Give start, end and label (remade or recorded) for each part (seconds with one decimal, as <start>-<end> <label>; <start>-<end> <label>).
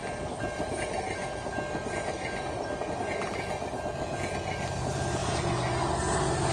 0.0-5.2 recorded; 5.2-5.9 remade; 5.9-6.5 recorded